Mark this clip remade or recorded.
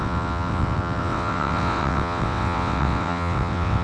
remade